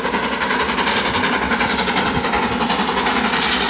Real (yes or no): yes